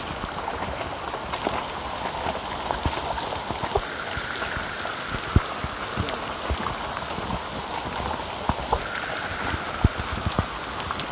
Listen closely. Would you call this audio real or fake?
real